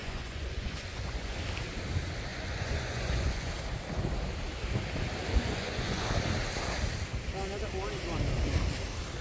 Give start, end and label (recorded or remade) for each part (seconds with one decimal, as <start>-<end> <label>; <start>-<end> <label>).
0.0-1.4 remade; 1.4-2.3 recorded; 2.3-3.5 remade; 3.5-5.3 recorded; 5.3-6.1 remade; 6.1-9.2 recorded

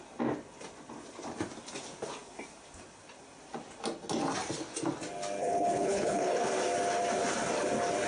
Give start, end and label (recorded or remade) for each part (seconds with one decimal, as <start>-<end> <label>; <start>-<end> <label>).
0.0-5.4 recorded; 5.4-6.5 remade; 6.5-8.1 recorded

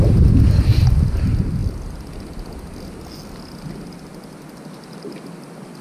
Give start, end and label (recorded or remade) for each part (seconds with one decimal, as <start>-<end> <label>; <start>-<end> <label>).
0.0-5.8 recorded

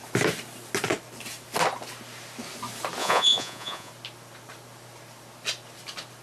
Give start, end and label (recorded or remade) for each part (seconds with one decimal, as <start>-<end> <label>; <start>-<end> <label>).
0.0-3.0 recorded; 3.0-3.9 remade; 3.9-6.2 recorded

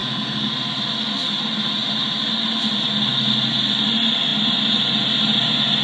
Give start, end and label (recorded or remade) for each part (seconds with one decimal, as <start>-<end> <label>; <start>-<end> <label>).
0.0-0.5 remade; 0.5-5.8 recorded

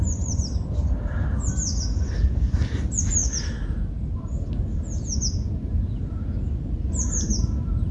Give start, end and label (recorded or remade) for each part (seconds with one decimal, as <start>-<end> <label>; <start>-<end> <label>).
0.0-7.9 recorded

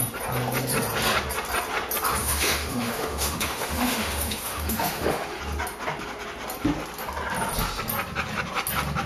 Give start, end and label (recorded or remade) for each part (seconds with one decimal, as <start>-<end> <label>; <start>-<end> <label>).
0.0-2.2 recorded; 2.2-5.4 remade; 5.4-9.1 recorded